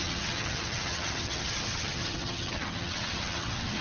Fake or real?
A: fake